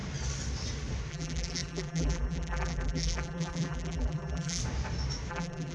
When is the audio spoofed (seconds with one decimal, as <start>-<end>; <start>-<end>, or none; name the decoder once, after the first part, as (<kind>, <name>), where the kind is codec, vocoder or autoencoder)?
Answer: 1.1-4.6 (vocoder, BigVGAN v2); 5.3-5.7

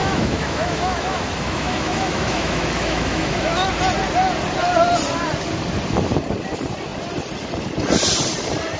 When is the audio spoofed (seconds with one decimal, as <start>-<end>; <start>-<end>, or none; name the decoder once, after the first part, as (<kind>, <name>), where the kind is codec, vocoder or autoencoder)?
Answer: 0.0-3.7 (autoencoder, DAC-VAE)

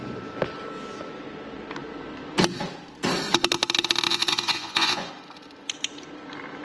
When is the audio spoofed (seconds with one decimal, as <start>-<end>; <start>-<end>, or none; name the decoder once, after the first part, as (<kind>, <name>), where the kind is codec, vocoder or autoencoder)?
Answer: 4.1-5.1 (vocoder, Vocos)

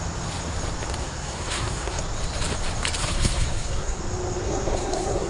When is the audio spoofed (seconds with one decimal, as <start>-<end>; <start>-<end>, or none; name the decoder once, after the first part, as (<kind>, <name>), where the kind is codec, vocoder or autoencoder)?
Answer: 1.0-2.0 (codec, SNAC); 3.0-4.0; 4.4-5.3

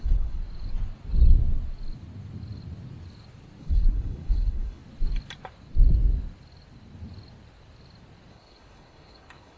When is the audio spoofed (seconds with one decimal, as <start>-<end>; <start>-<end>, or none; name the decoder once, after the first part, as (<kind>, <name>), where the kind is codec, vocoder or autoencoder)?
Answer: 0.0-0.4 (codec, HILCodec); 3.6-4.8; 8.3-9.6

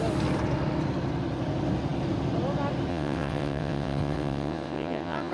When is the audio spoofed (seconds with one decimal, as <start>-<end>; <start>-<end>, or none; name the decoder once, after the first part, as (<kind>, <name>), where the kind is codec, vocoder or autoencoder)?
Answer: 2.9-5.3 (vocoder, WaveNeXt)

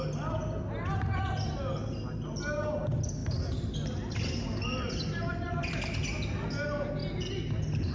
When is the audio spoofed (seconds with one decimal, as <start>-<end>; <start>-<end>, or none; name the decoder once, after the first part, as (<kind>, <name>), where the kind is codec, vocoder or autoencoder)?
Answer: none

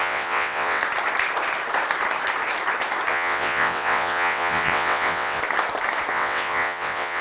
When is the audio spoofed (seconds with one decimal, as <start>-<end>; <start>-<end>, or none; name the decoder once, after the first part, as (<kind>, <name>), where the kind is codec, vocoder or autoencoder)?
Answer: 0.0-0.8 (vocoder, WaveNeXt); 3.1-5.4; 6.1-7.2